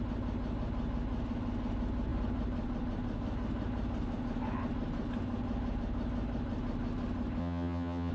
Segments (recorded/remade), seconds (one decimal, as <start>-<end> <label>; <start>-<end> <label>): 0.0-7.4 recorded; 7.4-8.1 remade